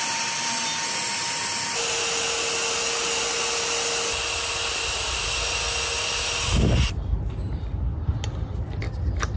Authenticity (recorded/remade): recorded